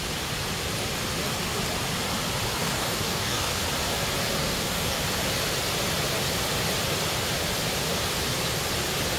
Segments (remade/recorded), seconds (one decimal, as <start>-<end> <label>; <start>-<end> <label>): 0.0-2.6 recorded; 2.6-3.6 remade; 3.6-4.4 recorded; 4.4-5.0 remade; 5.0-9.2 recorded